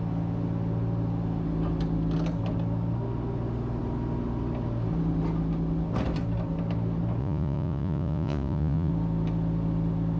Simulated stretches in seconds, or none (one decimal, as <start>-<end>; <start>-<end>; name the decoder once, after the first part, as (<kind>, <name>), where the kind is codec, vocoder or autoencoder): 7.2-8.9 (vocoder, Vocos)